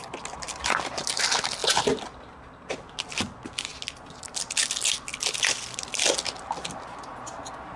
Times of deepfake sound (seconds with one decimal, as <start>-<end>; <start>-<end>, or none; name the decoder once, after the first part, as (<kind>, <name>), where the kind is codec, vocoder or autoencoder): none